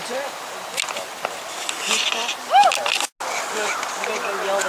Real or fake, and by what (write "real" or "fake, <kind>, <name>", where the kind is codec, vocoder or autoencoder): real